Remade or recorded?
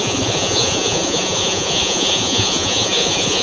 remade